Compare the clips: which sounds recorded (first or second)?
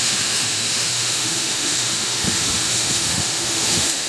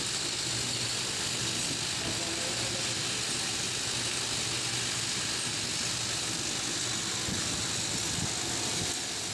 second